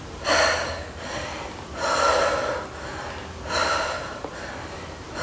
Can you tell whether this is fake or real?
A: real